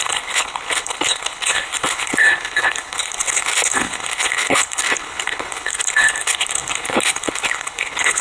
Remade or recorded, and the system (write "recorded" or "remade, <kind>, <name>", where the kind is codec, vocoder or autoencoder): remade, codec, HILCodec